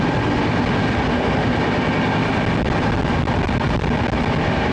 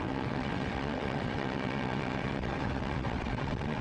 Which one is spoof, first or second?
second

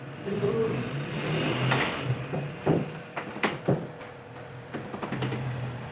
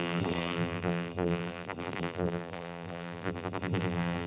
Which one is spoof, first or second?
second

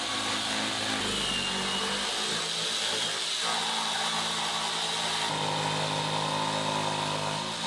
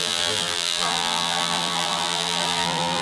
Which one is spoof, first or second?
second